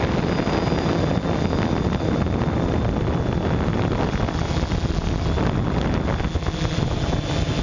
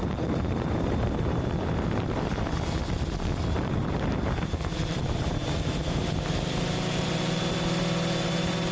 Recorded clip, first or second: first